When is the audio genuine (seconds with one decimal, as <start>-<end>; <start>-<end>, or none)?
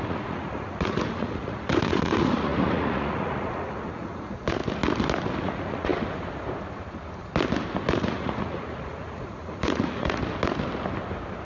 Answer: 4.6-5.4; 5.9-8.0; 10.2-11.4